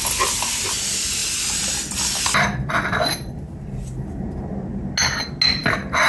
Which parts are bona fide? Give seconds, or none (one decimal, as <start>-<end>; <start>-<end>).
0.0-6.1